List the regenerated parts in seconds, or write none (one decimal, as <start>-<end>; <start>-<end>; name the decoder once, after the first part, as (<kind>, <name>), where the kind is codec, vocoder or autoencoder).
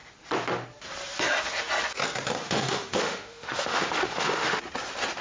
2.4-4.6 (autoencoder, DAC-VAE)